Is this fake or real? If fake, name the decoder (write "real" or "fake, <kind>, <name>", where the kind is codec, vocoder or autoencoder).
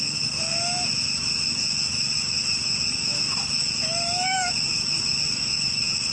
fake, autoencoder, DAC-VAE